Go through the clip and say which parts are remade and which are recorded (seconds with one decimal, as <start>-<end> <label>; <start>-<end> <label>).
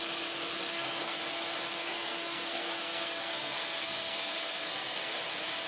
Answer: 0.0-0.7 recorded; 0.7-1.2 remade; 1.2-1.8 recorded; 1.8-5.2 remade; 5.2-5.7 recorded